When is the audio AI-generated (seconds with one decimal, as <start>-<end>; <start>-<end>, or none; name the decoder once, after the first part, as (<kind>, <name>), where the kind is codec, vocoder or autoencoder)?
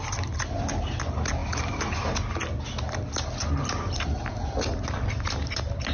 none